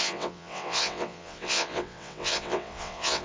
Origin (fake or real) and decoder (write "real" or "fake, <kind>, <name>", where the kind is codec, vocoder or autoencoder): fake, vocoder, WaveNeXt